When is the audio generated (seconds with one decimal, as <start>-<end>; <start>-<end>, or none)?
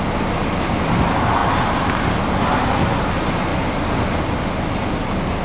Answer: none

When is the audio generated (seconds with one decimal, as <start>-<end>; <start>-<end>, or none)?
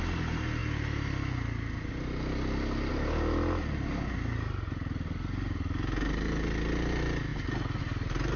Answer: none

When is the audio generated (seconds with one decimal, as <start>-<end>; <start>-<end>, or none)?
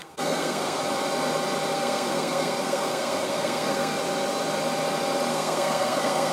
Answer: 0.0-0.8; 1.7-4.0; 5.3-6.3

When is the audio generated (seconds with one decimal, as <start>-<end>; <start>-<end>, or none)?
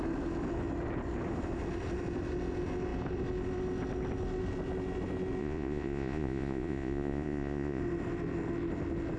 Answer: 5.4-7.8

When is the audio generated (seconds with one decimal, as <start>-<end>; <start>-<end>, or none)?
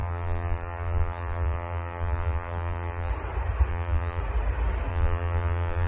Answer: 0.0-3.1; 3.7-4.2; 4.9-5.9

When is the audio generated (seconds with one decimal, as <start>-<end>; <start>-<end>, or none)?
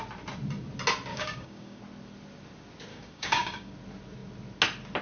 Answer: 1.1-1.8; 2.9-3.7